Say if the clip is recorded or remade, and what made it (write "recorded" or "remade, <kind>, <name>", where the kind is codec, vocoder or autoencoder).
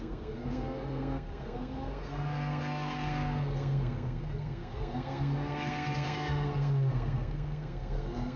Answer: remade, codec, SNAC